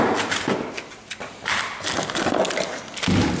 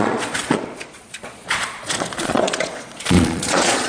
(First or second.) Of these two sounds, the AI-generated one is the second